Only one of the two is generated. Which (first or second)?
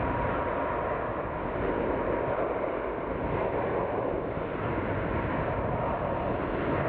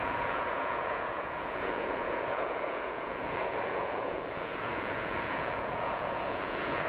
second